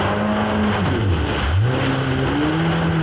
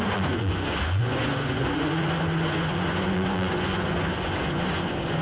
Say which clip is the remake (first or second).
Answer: second